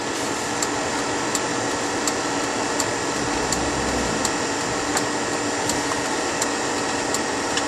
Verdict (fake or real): real